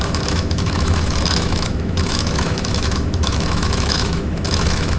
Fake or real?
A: fake